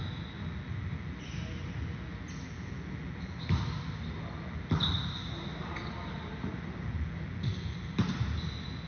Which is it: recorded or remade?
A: recorded